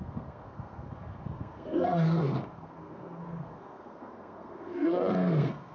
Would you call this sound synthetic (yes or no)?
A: yes